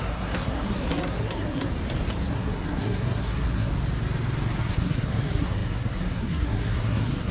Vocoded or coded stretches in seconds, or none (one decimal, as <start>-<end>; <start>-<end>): 0.0-1.7; 2.3-3.7; 4.6-7.3

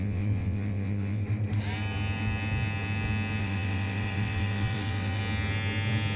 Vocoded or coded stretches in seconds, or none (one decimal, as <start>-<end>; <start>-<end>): 0.0-1.2; 3.4-5.2

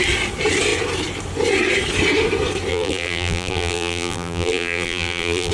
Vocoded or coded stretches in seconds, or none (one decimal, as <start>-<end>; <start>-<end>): 2.7-5.5

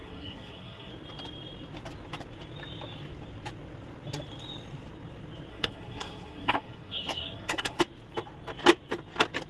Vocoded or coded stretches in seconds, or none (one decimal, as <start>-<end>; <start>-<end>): 0.0-0.9; 5.5-7.8

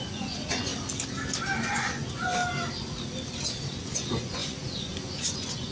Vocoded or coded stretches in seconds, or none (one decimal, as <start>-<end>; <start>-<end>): 0.0-0.7; 1.7-2.3; 3.8-5.7

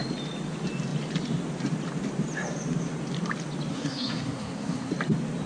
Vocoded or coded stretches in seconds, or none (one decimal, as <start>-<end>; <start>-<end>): 3.7-4.9

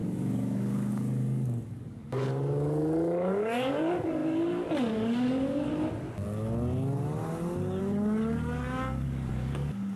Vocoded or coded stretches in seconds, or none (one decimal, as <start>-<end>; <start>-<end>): 0.0-5.7; 7.8-10.0

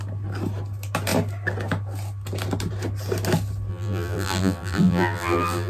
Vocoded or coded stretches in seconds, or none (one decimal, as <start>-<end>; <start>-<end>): 3.7-5.7